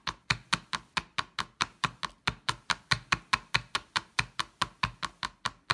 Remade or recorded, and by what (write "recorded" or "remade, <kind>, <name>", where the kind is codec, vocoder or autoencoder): recorded